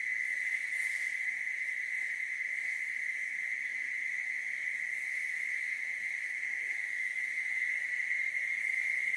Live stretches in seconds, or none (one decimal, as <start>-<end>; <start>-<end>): 0.0-3.0; 3.7-7.5